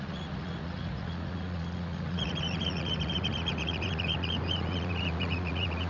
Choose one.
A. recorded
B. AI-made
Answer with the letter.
B